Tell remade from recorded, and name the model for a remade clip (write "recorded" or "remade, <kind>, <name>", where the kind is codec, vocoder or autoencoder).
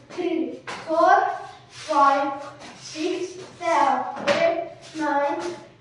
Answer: recorded